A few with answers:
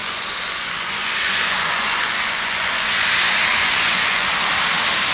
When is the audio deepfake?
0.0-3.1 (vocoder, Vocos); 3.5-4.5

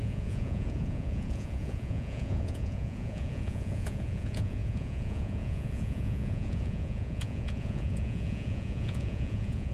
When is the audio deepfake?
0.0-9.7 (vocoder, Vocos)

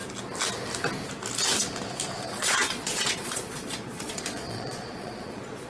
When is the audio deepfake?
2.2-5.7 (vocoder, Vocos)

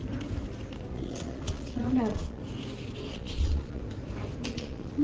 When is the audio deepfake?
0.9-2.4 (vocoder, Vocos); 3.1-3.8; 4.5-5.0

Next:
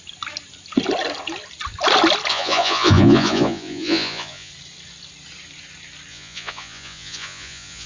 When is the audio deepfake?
2.3-4.5 (vocoder, Vocos); 6.1-7.9

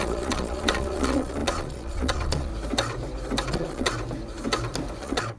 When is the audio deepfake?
0.0-2.5 (vocoder, Vocos); 3.5-3.9; 5.0-5.4